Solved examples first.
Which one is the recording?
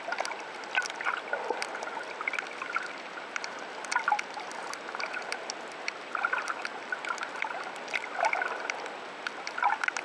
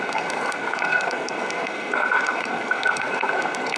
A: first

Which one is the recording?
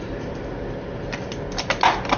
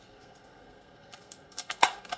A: first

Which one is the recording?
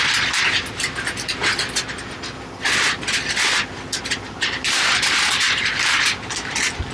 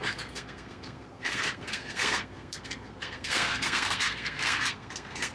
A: first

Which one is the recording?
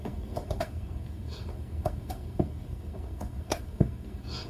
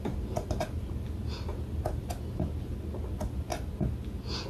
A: second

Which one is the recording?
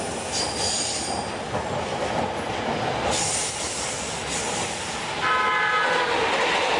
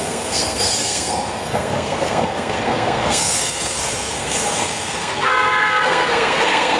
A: first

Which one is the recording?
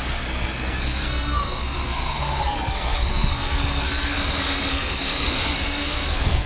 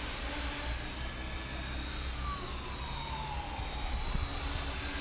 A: second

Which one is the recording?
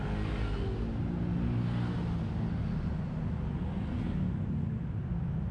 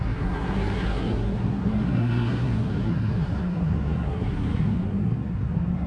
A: first